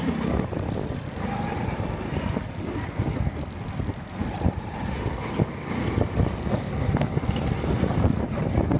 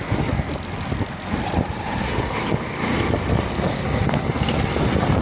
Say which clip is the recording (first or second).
second